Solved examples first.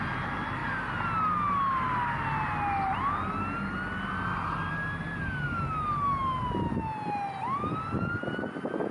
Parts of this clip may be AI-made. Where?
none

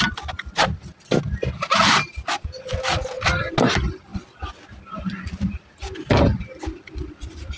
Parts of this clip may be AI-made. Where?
none

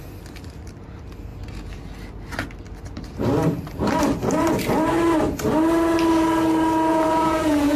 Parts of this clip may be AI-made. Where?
6.9-7.8 (vocoder, Vocos)

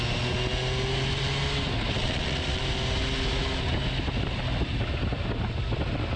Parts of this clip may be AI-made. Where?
2.0-2.6 (vocoder, Vocos)

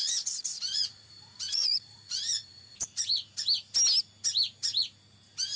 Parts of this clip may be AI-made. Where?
0.0-3.4 (vocoder, Vocos)

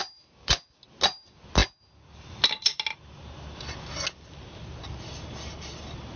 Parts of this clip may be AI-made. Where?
none